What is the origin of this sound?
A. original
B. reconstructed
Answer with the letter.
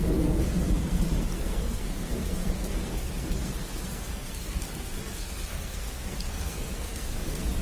B